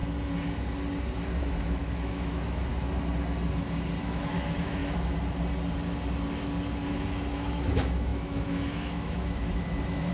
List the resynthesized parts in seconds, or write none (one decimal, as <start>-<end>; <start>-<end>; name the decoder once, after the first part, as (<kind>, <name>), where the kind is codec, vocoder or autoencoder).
1.4-2.7 (autoencoder, DAC-VAE); 4.0-4.8; 6.9-10.1